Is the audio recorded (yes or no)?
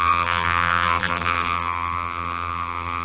no